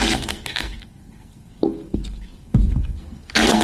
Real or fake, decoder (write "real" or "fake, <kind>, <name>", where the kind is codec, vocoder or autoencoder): fake, codec, SNAC